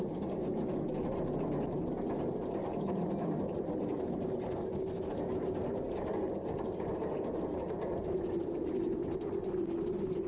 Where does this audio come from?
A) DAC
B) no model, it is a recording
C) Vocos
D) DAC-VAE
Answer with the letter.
B